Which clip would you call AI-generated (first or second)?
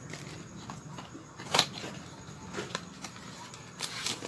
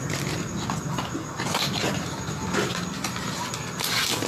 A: first